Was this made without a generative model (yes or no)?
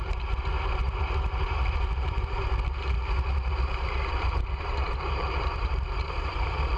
no